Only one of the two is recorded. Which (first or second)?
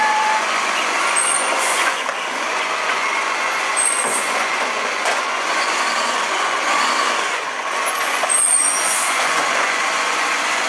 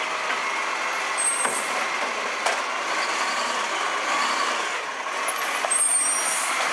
second